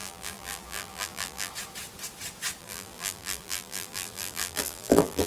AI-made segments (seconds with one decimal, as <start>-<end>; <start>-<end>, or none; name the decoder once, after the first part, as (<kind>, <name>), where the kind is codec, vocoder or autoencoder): 0.0-1.5 (vocoder, BigVGAN v2); 2.6-5.3